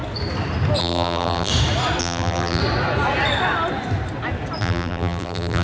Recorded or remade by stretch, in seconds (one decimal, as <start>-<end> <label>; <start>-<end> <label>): 0.0-0.8 recorded; 0.8-1.5 remade; 1.5-2.0 recorded; 2.0-2.6 remade; 2.6-4.6 recorded; 4.6-5.6 remade